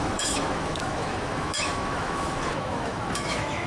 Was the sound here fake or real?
fake